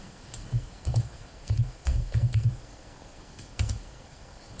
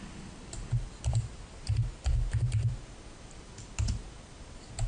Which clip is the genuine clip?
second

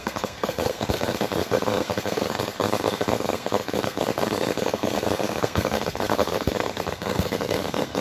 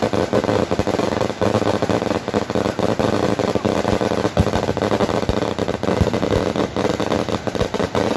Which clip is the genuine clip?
second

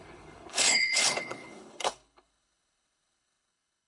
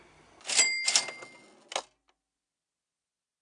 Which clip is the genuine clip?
second